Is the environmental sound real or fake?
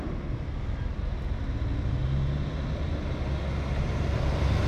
real